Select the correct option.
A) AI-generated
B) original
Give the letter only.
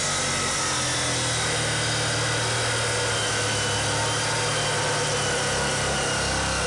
B